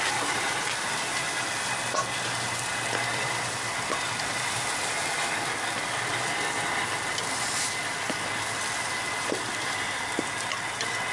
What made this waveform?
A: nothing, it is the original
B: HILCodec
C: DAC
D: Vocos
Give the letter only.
A